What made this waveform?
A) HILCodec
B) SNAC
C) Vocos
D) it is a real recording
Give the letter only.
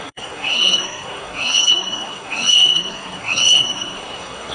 B